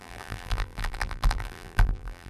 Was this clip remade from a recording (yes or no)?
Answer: yes